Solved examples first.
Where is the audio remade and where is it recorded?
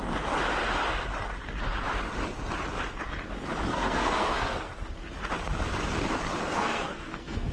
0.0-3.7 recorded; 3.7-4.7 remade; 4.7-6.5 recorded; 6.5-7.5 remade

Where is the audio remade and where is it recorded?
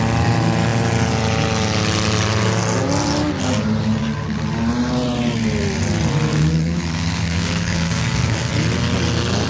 0.0-6.3 recorded; 6.3-8.5 remade; 8.5-9.5 recorded